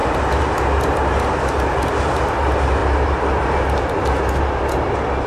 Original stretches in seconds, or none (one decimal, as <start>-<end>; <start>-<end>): 0.0-5.3